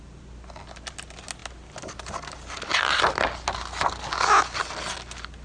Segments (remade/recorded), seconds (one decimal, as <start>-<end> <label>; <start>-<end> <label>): 0.0-5.4 recorded